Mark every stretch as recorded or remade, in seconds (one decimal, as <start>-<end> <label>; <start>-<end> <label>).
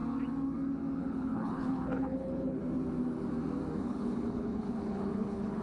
0.0-1.0 recorded; 1.0-2.6 remade; 2.6-3.8 recorded; 3.8-5.6 remade